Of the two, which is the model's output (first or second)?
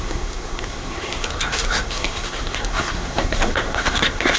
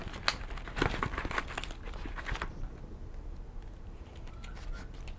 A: first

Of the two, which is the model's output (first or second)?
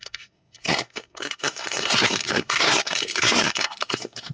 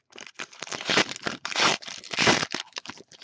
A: first